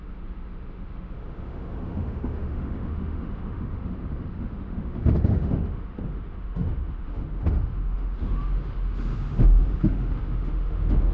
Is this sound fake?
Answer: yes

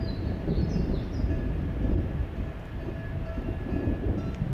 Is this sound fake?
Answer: no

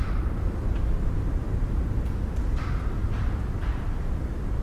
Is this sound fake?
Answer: no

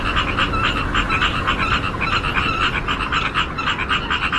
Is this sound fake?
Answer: no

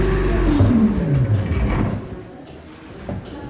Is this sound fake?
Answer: no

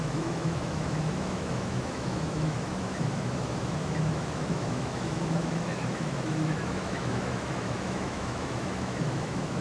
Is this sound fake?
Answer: yes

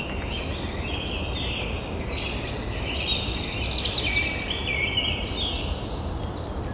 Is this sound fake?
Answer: no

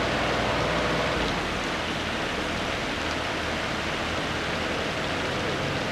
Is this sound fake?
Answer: no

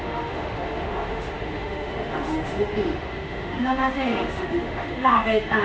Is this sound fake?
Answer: yes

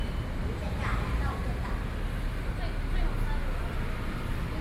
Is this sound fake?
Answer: no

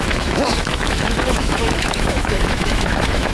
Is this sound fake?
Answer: yes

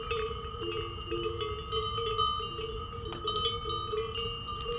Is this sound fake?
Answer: no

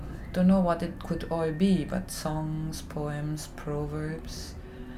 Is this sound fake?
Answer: no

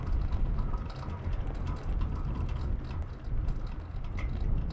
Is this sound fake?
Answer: no